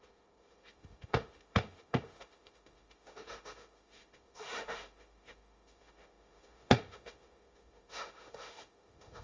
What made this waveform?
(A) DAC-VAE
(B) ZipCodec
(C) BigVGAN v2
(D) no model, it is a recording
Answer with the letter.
A